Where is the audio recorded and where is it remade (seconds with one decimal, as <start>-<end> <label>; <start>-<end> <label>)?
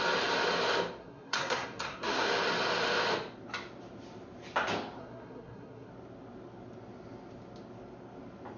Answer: 0.0-1.0 recorded; 1.0-2.3 remade; 2.3-5.0 recorded; 5.0-5.9 remade; 5.9-8.6 recorded